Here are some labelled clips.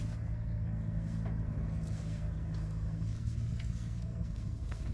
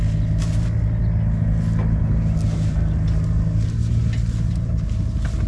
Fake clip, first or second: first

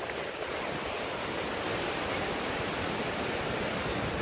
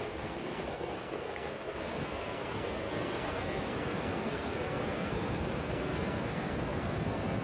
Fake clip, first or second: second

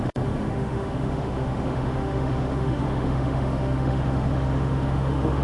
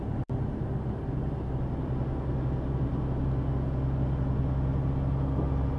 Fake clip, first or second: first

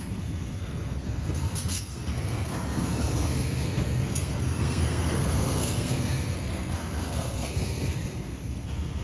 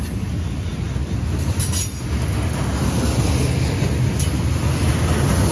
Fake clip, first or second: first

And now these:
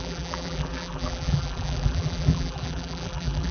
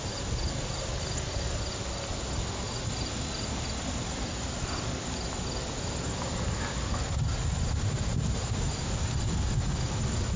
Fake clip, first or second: first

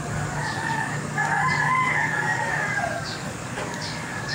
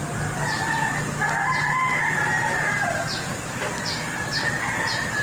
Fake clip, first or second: first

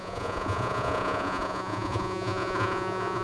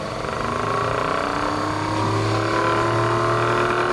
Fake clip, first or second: first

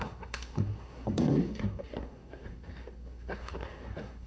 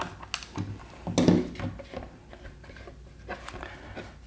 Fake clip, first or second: first